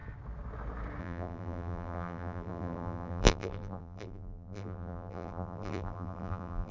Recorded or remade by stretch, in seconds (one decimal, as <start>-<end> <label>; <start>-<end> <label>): 0.0-1.0 recorded; 1.0-6.7 remade